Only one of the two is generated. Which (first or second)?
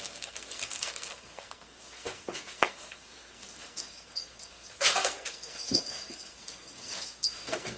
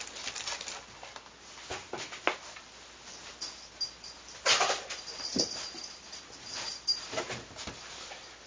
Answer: first